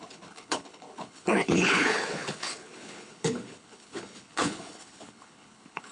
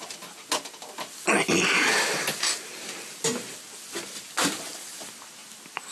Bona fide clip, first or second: second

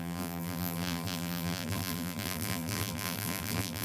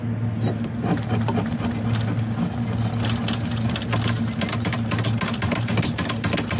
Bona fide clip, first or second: second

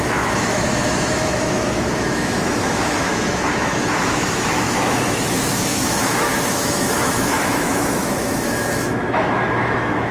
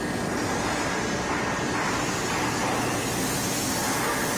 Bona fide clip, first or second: second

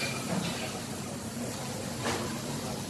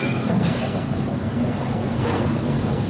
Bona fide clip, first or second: first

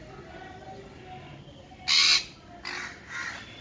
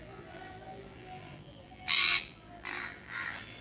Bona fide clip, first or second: first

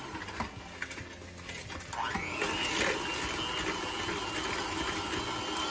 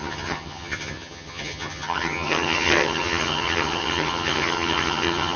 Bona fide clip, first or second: first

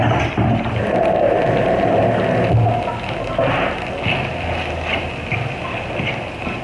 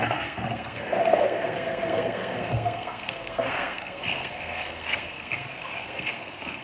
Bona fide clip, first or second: first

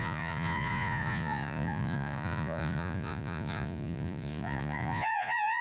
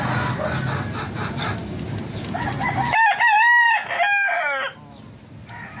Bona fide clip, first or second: second